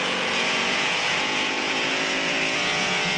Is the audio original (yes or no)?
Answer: no